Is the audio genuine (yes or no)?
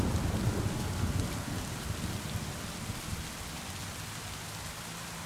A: yes